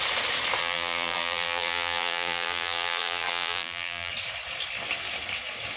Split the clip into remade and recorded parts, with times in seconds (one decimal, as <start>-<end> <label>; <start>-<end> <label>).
0.0-0.6 recorded; 0.6-4.1 remade; 4.1-5.8 recorded